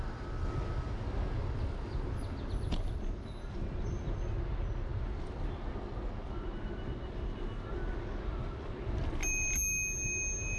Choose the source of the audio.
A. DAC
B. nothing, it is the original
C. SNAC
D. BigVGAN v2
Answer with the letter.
B